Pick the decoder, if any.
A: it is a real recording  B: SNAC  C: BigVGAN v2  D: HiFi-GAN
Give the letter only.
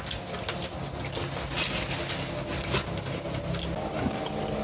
A